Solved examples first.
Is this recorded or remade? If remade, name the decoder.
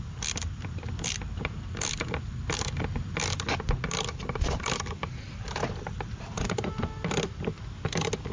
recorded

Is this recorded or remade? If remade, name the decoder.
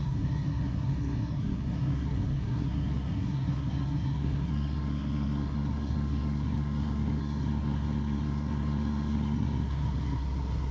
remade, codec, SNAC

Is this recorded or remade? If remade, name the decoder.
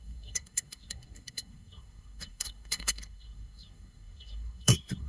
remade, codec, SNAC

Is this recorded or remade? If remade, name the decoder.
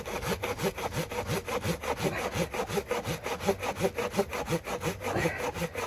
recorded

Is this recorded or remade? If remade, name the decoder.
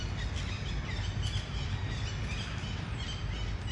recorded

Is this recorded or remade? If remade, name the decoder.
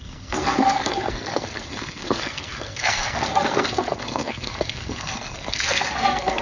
remade, codec, SNAC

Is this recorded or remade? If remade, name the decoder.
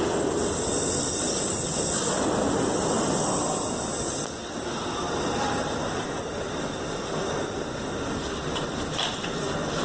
recorded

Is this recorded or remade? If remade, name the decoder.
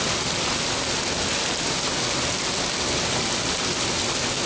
recorded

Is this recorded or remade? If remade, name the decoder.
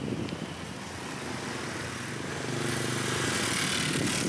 recorded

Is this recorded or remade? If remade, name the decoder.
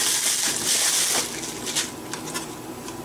recorded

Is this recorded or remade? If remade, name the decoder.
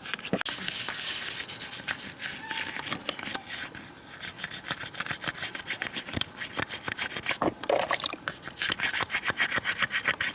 recorded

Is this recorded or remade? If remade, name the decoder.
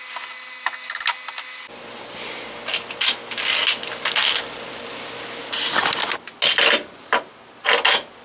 recorded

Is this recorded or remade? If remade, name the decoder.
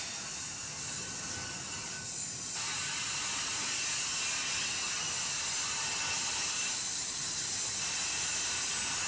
recorded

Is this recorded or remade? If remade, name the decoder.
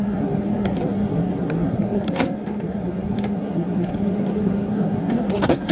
remade, codec, SNAC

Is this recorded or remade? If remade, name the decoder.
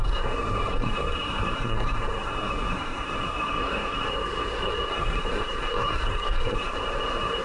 remade, codec, SNAC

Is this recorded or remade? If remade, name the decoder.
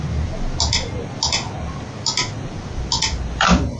recorded